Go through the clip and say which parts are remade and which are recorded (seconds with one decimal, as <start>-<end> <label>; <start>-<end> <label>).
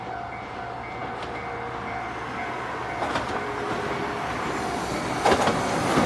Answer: 0.0-6.1 recorded